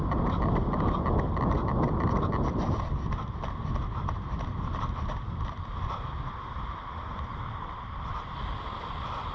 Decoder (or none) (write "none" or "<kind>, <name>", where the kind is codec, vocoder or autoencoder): none